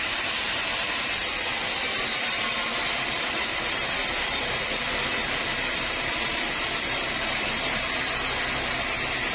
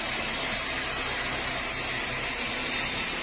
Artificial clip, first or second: first